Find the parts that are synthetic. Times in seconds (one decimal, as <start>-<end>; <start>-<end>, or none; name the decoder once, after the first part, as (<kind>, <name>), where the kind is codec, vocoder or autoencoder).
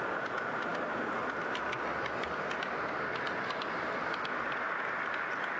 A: none